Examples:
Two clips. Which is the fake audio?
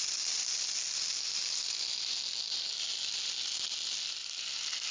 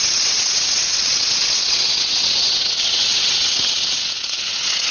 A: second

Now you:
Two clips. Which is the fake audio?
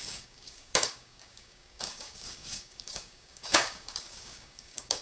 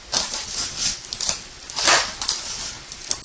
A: first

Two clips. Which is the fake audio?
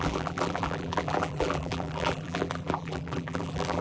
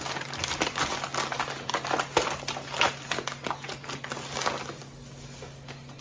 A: first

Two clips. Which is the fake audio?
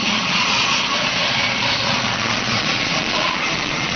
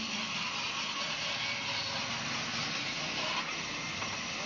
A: first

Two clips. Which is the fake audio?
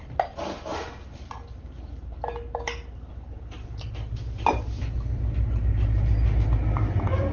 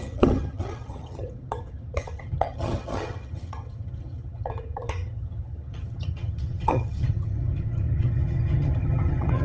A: second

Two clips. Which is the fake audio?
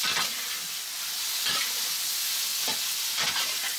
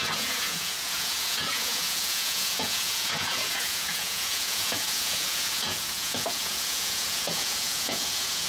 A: second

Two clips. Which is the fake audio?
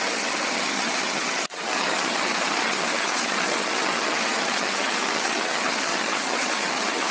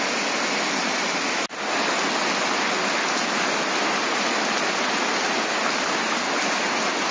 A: first